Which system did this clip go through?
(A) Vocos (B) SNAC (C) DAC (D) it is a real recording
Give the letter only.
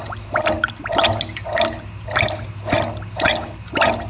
D